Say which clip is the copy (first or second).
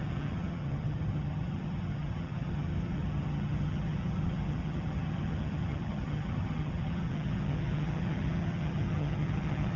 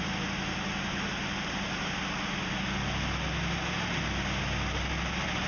first